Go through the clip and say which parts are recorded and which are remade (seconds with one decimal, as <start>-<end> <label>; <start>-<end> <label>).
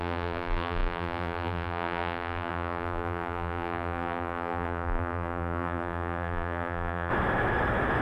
0.0-7.1 remade; 7.1-8.0 recorded